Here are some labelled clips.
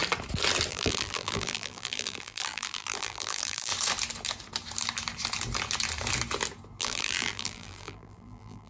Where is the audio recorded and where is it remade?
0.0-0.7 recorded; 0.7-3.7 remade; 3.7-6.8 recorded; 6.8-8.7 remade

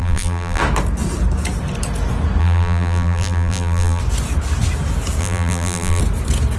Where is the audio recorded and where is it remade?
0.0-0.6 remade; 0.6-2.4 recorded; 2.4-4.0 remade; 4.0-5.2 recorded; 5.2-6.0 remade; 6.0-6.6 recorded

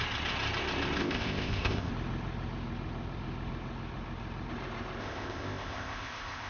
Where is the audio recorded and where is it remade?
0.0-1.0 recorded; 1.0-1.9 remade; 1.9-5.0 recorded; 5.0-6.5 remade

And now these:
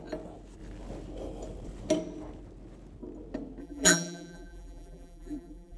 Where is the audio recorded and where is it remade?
0.0-3.6 recorded; 3.6-5.8 remade

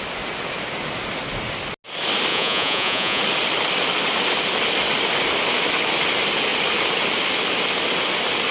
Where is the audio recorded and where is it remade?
0.0-2.3 recorded; 2.3-3.2 remade; 3.2-8.5 recorded